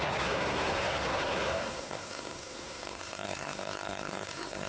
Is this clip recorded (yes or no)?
no